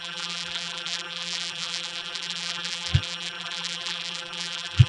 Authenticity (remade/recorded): remade